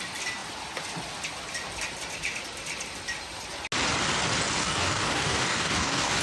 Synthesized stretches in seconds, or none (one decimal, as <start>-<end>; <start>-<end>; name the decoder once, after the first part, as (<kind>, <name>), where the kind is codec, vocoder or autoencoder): 4.6-6.2 (codec, DAC)